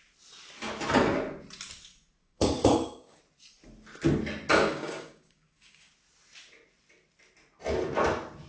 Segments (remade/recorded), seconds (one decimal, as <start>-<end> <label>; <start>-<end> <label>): 0.0-2.2 recorded; 2.2-3.2 remade; 3.2-4.5 recorded; 4.5-5.9 remade; 5.9-8.5 recorded